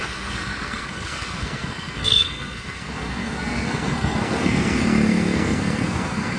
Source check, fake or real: fake